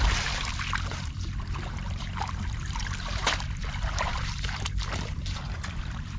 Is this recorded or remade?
remade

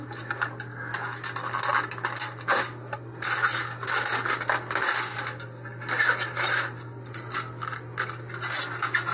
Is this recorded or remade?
recorded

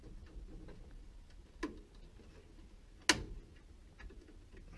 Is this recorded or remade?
recorded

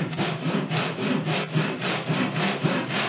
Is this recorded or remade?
remade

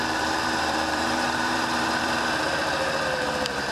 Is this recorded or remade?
remade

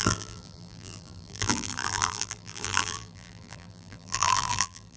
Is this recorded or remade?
remade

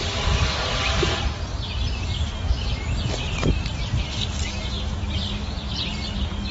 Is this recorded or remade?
recorded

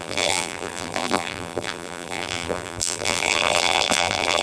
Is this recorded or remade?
remade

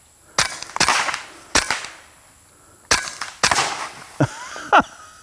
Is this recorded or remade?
recorded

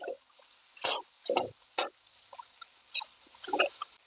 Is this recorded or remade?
recorded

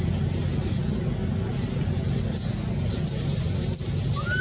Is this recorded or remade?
recorded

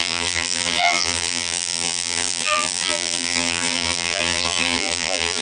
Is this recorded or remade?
remade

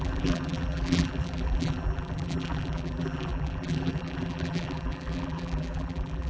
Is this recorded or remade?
remade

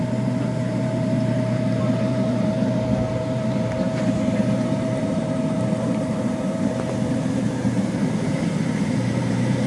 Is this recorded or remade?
remade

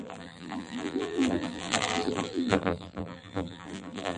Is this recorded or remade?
remade